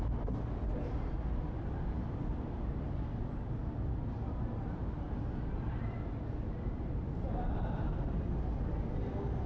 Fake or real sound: real